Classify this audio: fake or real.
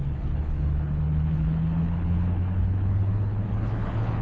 fake